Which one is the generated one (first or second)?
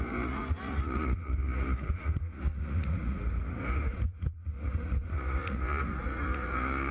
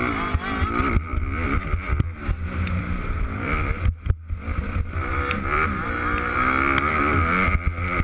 first